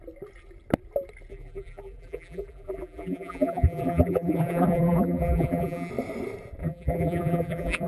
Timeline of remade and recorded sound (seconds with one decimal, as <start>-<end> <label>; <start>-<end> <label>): 0.0-1.3 recorded; 1.3-5.9 remade; 5.9-6.6 recorded; 6.6-7.9 remade